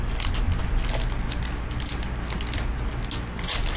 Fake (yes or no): no